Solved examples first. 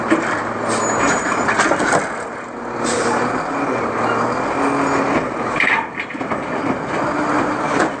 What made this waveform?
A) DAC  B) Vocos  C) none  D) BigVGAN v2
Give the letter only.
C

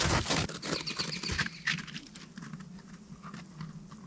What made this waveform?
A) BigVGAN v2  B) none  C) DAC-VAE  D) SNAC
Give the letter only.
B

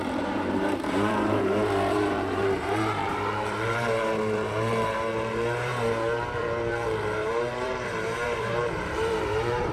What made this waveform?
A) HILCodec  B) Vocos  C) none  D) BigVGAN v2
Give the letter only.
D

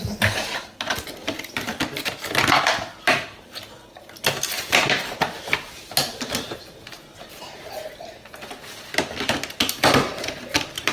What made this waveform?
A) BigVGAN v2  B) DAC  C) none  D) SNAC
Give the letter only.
C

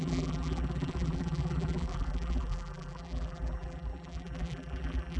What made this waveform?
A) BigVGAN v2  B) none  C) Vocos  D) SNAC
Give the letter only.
A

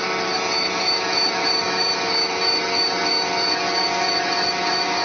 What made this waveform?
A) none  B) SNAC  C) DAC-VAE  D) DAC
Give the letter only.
C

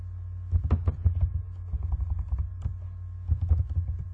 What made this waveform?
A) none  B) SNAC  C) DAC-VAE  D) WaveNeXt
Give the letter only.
A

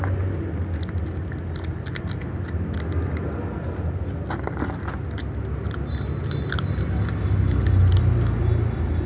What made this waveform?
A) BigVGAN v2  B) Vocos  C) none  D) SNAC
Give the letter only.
C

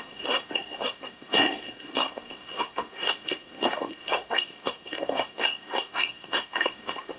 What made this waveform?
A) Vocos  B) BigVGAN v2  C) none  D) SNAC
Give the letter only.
D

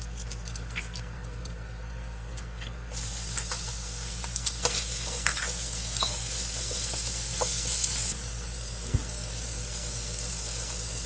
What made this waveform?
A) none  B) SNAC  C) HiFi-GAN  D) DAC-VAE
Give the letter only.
B